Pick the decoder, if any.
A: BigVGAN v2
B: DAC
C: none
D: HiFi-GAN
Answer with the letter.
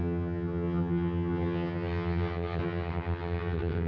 D